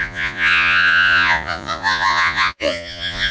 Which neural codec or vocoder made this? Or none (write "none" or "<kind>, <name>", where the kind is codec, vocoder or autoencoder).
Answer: vocoder, Vocos